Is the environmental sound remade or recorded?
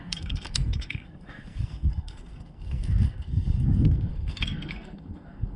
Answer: remade